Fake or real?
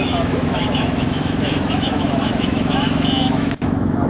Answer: fake